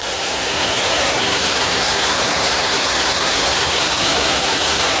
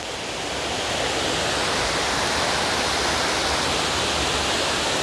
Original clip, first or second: second